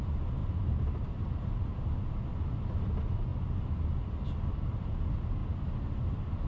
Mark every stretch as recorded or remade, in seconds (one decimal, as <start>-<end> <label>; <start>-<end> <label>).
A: 0.0-0.4 recorded; 0.4-1.2 remade; 1.2-6.5 recorded

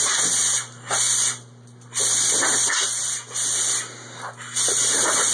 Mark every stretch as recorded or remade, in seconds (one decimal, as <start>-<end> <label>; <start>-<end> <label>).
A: 0.0-5.3 recorded

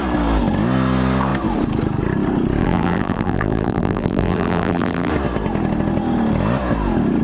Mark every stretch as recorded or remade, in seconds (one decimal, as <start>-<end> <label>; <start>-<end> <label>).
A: 0.0-2.6 recorded; 2.6-5.1 remade; 5.1-7.2 recorded

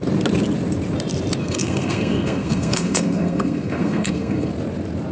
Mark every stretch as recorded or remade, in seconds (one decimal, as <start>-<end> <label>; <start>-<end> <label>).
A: 0.0-1.4 recorded; 1.4-4.5 remade; 4.5-5.1 recorded